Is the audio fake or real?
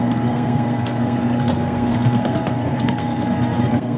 fake